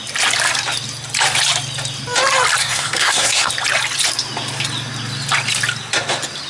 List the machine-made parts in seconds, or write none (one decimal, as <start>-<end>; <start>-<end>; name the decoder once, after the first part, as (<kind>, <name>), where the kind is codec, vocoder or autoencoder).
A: 2.6-3.5 (codec, SNAC)